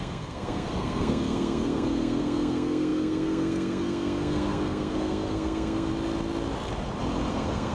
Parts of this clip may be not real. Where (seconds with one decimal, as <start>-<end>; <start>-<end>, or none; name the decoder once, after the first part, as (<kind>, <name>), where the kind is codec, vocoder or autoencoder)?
0.0-5.9 (codec, SNAC); 7.3-7.7